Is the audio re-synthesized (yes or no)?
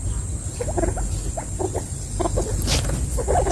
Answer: no